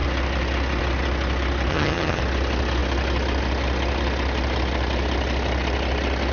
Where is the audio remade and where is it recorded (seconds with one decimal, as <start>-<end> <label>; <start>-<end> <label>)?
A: 0.0-1.7 recorded; 1.7-2.2 remade; 2.2-6.3 recorded